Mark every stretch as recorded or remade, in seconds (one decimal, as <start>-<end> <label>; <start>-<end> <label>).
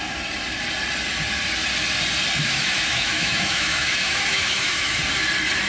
0.0-2.4 recorded; 2.4-5.0 remade; 5.0-5.7 recorded